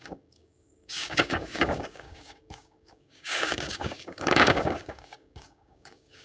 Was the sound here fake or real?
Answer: fake